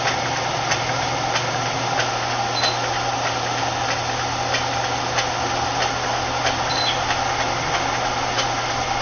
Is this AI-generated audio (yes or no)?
no